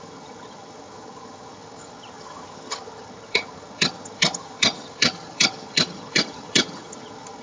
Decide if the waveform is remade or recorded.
remade